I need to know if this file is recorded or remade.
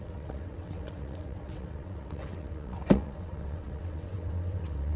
remade